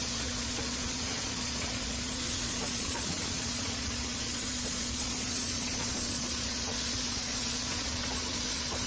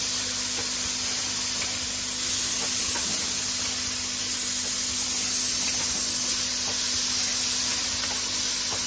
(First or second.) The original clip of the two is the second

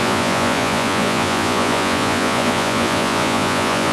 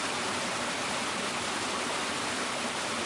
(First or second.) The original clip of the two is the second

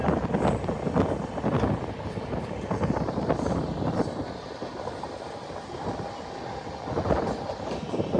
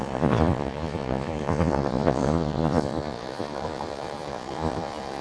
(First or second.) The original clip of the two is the first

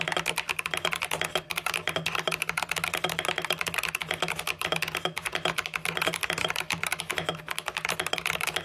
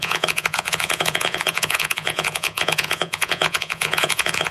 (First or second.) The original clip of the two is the first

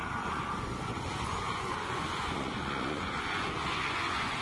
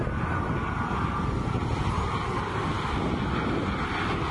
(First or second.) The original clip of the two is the second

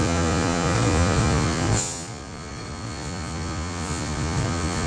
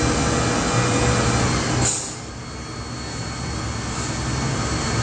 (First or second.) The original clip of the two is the second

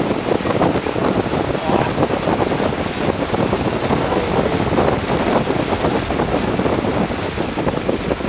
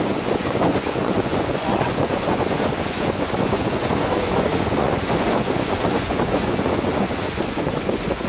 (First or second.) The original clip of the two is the first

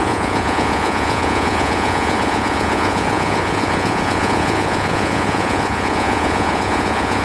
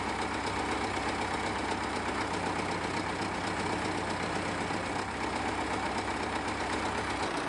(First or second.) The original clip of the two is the second